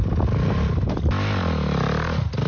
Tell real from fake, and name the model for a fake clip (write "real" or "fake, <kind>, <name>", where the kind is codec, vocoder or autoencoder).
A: real